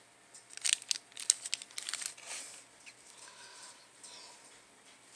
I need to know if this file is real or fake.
real